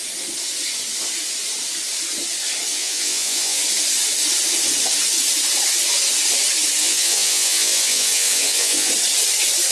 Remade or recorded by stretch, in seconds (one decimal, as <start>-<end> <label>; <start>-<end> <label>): 0.0-2.7 recorded; 2.7-3.6 remade; 3.6-6.8 recorded; 6.8-8.9 remade; 8.9-9.7 recorded